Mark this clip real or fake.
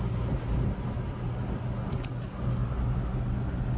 real